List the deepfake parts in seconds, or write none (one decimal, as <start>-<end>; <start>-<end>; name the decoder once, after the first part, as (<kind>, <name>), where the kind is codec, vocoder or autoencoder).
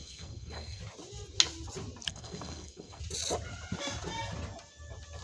0.0-0.8 (codec, SNAC); 2.1-3.0